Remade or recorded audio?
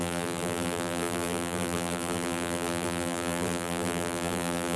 remade